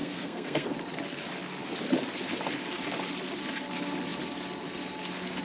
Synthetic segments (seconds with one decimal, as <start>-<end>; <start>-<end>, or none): 0.0-0.7